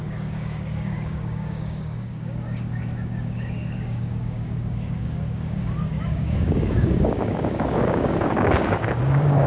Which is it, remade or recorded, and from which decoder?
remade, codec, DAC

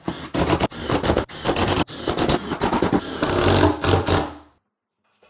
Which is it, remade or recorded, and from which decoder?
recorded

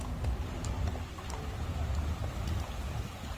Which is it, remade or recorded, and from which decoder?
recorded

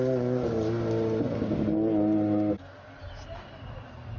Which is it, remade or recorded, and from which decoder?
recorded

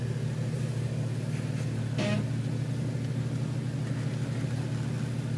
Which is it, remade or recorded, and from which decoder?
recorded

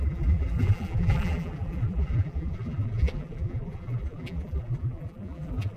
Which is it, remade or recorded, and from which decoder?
remade, vocoder, BigVGAN v2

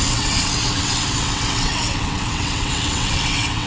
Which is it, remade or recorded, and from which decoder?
remade, vocoder, WaveNeXt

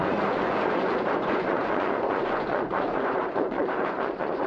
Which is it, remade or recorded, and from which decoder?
remade, vocoder, Vocos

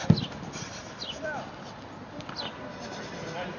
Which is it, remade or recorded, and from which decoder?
recorded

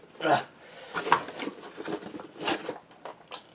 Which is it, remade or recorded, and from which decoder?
recorded